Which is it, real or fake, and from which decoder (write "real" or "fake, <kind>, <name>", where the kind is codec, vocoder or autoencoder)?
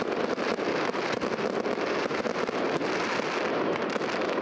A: real